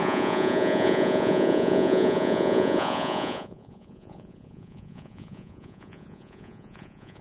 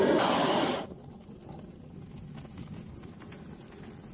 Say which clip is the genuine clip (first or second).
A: second